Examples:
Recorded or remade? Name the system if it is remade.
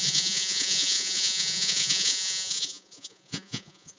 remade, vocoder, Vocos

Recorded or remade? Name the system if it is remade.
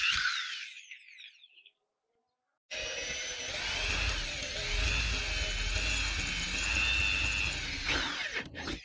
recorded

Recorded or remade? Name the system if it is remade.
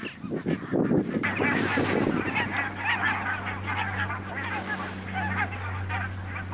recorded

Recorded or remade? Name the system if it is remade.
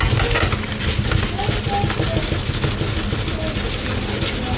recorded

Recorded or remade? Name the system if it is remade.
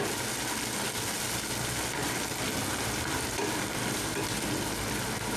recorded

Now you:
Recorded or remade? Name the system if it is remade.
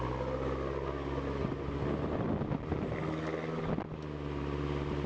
recorded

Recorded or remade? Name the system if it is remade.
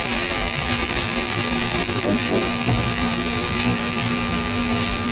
remade, vocoder, BigVGAN v2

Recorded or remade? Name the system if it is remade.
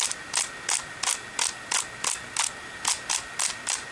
recorded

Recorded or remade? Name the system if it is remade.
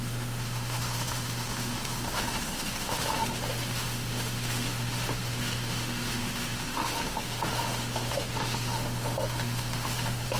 remade, autoencoder, DAC-VAE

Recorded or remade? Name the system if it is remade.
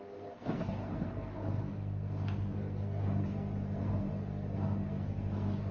remade, codec, SNAC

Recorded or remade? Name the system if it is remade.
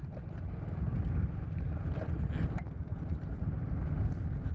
recorded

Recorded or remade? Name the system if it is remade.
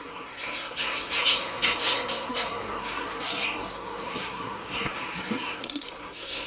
remade, codec, SNAC